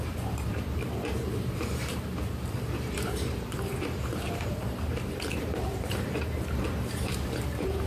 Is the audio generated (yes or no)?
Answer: yes